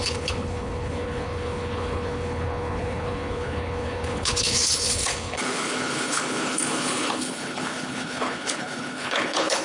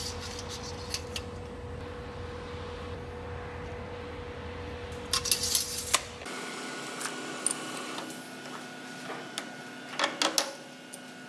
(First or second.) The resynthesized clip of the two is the first